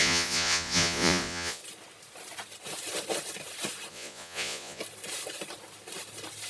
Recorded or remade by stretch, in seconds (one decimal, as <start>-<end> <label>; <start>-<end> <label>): 0.0-1.6 remade; 1.6-3.9 recorded; 3.9-4.8 remade; 4.8-6.5 recorded